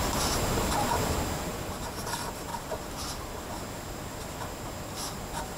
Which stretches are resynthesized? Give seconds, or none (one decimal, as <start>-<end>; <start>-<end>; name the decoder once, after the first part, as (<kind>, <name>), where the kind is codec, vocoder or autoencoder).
1.5-2.0 (vocoder, BigVGAN v2); 2.5-3.5